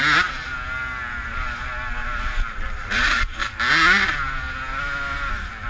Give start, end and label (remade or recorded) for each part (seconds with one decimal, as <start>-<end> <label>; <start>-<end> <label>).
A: 0.0-2.0 recorded; 2.0-3.6 remade; 3.6-5.7 recorded